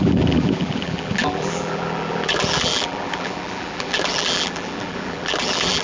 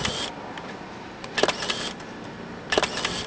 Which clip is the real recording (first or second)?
second